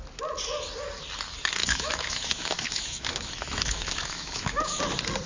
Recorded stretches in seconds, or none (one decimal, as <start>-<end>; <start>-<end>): 0.0-1.6; 4.8-5.3

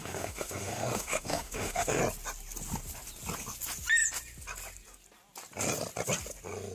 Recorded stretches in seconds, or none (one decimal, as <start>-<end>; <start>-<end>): 2.0-6.7

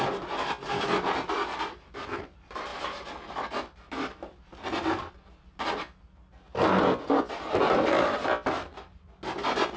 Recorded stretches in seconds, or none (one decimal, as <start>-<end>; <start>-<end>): 0.0-9.8

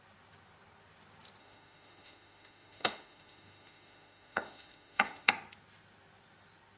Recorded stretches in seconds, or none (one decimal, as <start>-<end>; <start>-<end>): 0.0-1.4; 5.3-6.8

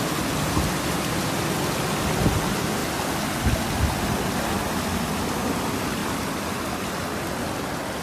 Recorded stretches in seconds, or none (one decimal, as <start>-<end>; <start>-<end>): 0.0-8.0

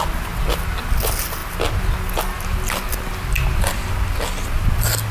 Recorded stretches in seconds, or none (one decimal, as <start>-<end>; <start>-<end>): 0.0-5.1

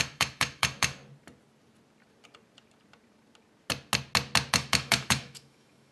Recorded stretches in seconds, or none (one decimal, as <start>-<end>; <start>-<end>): 1.0-4.5